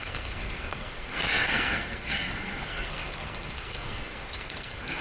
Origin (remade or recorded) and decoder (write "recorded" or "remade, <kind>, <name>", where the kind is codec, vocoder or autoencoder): remade, codec, SNAC